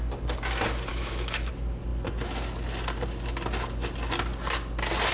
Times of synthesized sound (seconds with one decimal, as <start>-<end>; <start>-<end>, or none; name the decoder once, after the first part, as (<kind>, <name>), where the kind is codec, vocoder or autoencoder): 0.9-1.5 (autoencoder, DAC-VAE)